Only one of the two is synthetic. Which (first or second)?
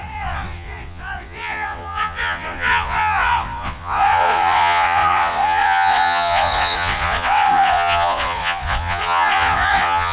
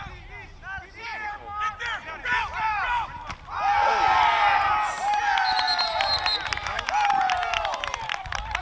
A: first